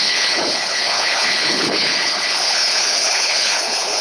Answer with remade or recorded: remade